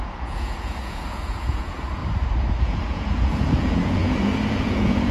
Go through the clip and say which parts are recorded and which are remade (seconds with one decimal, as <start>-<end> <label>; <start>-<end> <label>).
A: 0.0-2.0 remade; 2.0-2.6 recorded; 2.6-5.1 remade

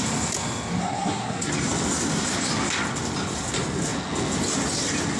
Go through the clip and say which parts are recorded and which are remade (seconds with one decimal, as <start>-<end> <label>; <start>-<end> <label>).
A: 0.0-0.8 recorded; 0.8-1.5 remade; 1.5-5.2 recorded

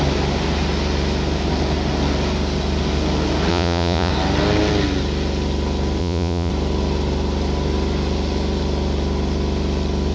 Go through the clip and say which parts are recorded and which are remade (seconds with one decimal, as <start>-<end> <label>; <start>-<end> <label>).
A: 0.0-3.5 recorded; 3.5-4.1 remade; 4.1-6.0 recorded; 6.0-6.5 remade; 6.5-10.1 recorded

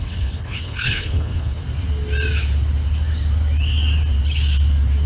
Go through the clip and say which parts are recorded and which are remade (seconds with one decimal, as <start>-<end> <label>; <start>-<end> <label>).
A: 0.0-1.6 remade; 1.6-5.1 recorded

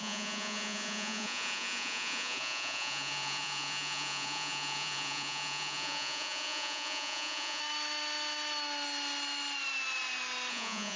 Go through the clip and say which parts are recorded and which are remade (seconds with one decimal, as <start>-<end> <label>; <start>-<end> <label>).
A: 0.0-7.6 remade; 7.6-10.5 recorded; 10.5-11.0 remade

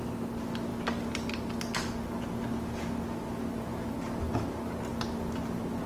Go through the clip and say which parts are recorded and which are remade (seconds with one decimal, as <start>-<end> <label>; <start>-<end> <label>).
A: 0.0-5.9 recorded